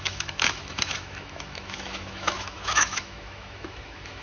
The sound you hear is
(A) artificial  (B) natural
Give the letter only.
A